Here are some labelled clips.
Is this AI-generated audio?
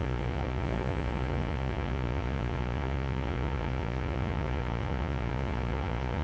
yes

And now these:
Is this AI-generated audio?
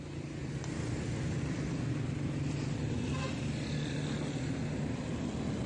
no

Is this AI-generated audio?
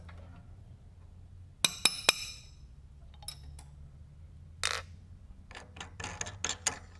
no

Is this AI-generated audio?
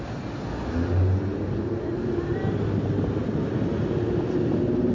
no